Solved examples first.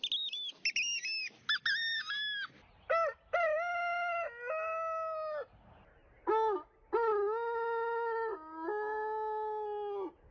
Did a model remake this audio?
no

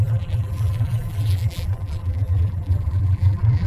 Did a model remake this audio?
yes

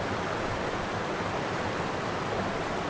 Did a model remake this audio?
yes